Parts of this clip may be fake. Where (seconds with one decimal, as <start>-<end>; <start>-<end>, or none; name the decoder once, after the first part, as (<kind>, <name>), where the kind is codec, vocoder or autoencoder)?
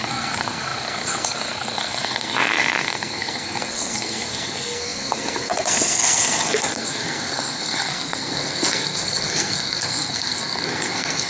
0.0-11.3 (codec, SNAC)